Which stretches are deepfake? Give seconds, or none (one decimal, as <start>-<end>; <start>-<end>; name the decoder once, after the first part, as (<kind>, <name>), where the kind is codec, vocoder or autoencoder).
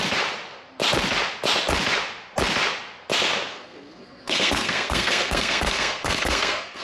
3.5-6.8 (codec, SNAC)